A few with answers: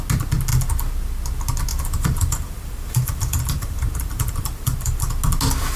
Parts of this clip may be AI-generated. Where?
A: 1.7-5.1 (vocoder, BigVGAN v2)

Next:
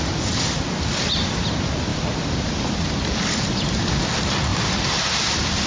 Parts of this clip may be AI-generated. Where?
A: 1.9-2.9 (vocoder, BigVGAN v2); 4.5-5.7

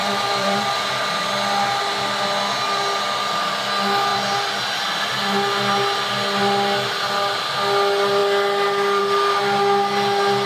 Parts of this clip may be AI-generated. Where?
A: 0.0-0.7 (vocoder, BigVGAN v2); 4.1-4.6